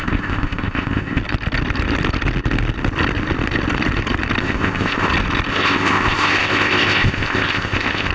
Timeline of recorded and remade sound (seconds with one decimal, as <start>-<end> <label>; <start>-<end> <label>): 0.0-1.2 remade; 1.2-4.4 recorded; 4.4-5.1 remade; 5.1-5.5 recorded; 5.5-8.1 remade